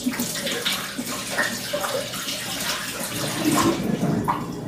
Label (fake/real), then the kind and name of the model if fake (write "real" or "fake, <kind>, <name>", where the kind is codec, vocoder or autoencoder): real